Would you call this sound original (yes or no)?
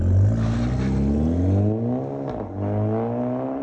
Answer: yes